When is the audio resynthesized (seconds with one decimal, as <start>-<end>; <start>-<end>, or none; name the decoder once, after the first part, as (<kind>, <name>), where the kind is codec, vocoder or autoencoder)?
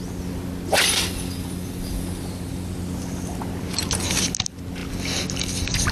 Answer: none